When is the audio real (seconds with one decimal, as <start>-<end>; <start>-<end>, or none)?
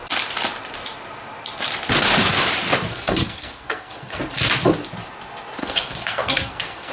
0.0-2.9; 4.2-5.6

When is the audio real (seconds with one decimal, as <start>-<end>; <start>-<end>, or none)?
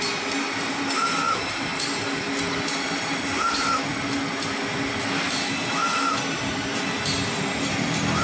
0.0-8.2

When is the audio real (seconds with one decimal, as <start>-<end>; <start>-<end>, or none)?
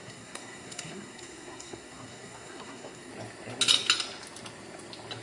3.1-5.2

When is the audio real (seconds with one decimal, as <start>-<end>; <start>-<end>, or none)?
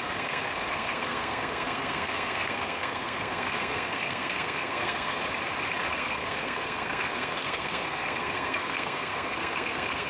5.2-5.9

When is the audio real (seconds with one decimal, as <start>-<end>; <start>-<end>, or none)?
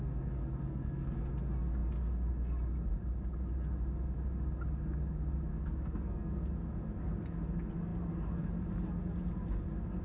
0.0-0.7; 1.3-5.5; 6.4-10.0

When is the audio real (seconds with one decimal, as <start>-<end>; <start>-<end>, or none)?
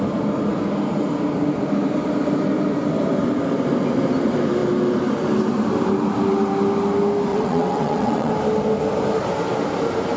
0.0-7.3; 8.3-10.2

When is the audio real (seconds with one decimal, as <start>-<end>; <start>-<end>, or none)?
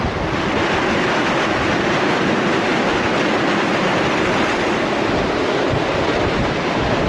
0.0-7.1